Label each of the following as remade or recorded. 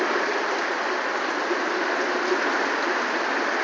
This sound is recorded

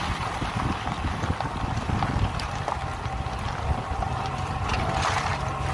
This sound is recorded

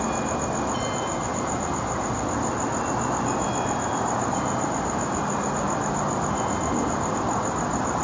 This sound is recorded